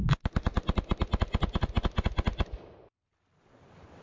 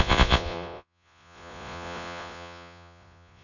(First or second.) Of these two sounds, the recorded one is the first